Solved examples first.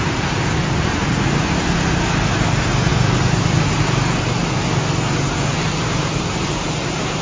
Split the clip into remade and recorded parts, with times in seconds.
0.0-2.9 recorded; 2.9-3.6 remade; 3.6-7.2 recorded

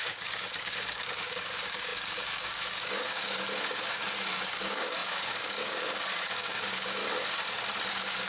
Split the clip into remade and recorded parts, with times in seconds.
0.0-7.0 remade; 7.0-7.9 recorded; 7.9-8.3 remade